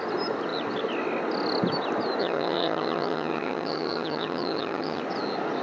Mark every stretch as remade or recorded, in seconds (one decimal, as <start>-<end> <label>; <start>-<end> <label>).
0.0-2.2 recorded; 2.2-5.0 remade; 5.0-5.6 recorded